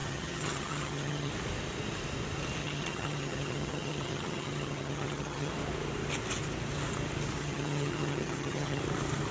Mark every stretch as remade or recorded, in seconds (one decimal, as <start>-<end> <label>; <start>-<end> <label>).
0.0-1.3 remade; 1.3-2.6 recorded; 2.6-5.5 remade; 5.5-7.4 recorded; 7.4-8.8 remade; 8.8-9.3 recorded